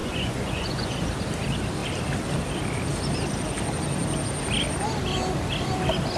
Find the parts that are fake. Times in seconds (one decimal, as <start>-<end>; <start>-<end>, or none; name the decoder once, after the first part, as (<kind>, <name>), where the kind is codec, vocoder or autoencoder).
0.0-0.9 (vocoder, Vocos)